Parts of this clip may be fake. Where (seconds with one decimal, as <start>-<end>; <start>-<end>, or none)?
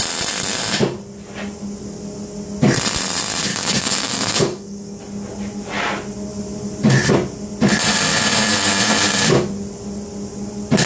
3.5-5.0